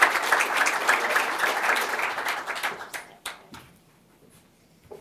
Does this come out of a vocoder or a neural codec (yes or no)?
yes